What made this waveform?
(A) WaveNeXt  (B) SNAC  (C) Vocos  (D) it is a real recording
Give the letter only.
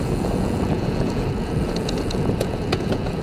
C